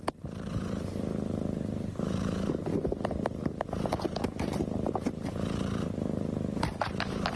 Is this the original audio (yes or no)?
no